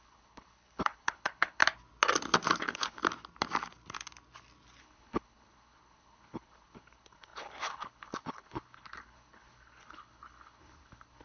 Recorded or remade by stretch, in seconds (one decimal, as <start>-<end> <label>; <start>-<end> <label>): 0.0-1.6 remade; 1.6-2.6 recorded; 2.6-3.0 remade; 3.0-4.8 recorded; 4.8-11.2 remade